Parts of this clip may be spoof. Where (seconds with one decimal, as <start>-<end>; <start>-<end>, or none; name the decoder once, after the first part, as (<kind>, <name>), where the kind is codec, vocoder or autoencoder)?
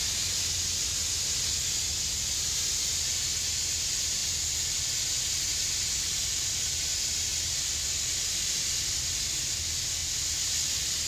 none